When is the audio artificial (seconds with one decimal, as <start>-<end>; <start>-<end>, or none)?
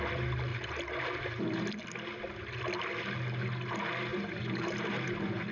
0.5-1.7; 4.1-5.5